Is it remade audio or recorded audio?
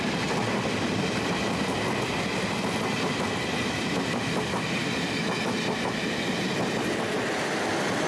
recorded